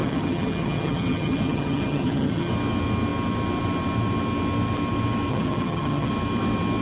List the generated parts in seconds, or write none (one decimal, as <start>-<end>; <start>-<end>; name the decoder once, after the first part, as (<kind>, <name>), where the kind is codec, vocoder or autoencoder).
0.0-2.5 (vocoder, HiFi-GAN); 5.3-6.1